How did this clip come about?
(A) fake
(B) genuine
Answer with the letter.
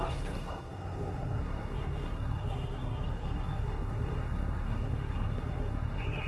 A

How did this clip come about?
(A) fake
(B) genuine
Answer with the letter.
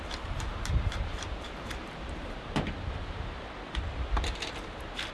A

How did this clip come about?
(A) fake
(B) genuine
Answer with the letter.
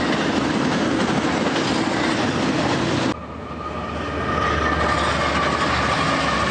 B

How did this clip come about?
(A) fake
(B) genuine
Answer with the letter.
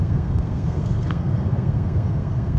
A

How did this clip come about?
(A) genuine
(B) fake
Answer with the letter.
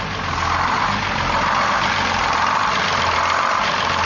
A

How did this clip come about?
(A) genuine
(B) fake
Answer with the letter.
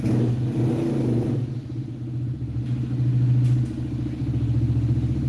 A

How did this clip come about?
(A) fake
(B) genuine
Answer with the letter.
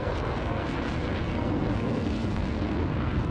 A